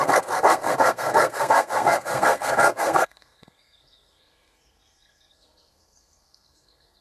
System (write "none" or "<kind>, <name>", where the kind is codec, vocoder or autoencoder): codec, SNAC